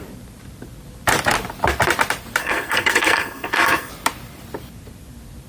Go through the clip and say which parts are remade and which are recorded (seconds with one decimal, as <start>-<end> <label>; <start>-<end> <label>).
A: 0.0-2.4 recorded; 2.4-3.9 remade; 3.9-5.5 recorded